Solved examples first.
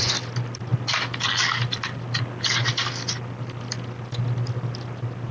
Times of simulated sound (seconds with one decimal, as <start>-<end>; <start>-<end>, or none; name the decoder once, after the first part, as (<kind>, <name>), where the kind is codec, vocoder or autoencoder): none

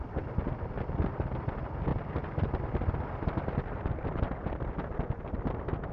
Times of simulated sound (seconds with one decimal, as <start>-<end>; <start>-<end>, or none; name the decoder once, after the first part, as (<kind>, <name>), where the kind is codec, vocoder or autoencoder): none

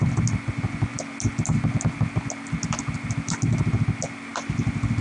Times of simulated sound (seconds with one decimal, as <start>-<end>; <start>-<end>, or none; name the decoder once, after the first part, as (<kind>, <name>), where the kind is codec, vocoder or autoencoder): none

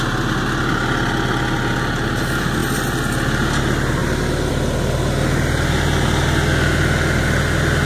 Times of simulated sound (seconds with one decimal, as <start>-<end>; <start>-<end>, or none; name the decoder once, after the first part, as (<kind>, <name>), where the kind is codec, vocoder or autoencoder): none

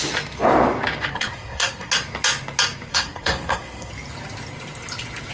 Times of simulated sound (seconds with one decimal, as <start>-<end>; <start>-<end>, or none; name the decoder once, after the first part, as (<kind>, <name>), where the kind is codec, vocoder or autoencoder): 1.1-1.9 (codec, SNAC); 2.9-3.9